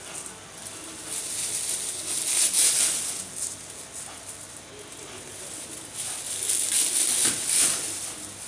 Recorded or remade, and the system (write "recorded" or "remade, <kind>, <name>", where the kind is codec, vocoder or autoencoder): recorded